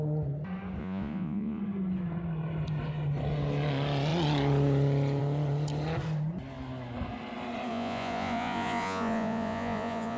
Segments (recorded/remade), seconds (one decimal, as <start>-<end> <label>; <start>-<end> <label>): 0.0-0.8 recorded; 0.8-1.6 remade; 1.6-7.7 recorded; 7.7-10.2 remade